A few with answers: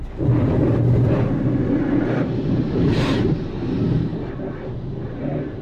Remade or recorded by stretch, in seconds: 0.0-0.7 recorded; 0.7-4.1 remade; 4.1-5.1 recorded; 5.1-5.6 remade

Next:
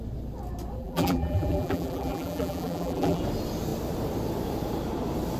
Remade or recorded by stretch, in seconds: 0.0-0.8 recorded; 0.8-3.2 remade; 3.2-5.4 recorded

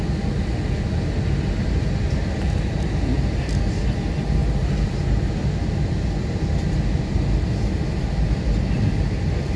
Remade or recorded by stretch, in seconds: 0.0-9.6 recorded

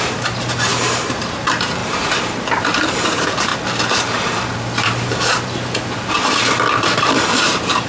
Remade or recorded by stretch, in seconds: 0.0-7.9 remade